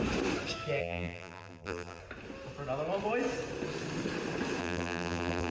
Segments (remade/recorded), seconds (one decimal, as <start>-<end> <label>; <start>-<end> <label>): 0.0-0.8 recorded; 0.8-2.0 remade; 2.0-4.6 recorded; 4.6-5.5 remade